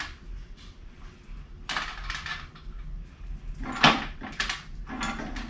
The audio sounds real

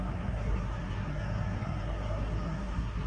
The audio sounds fake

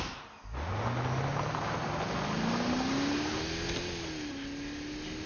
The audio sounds real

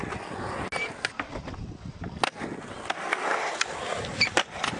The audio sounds real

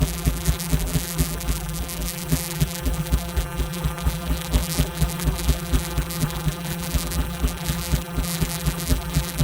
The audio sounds fake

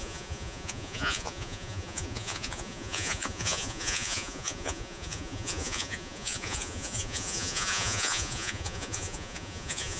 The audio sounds fake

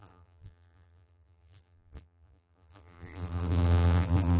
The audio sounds fake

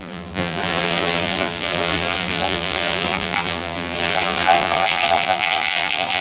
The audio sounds fake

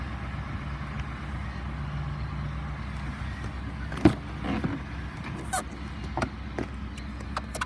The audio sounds real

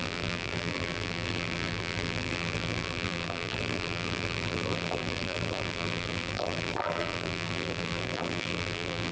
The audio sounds fake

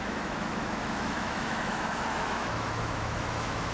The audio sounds fake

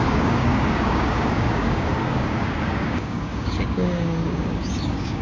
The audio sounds fake